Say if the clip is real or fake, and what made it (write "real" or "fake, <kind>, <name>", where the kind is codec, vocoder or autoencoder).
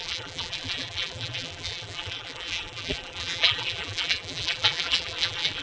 fake, vocoder, BigVGAN v2